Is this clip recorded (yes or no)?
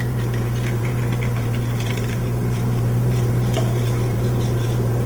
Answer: no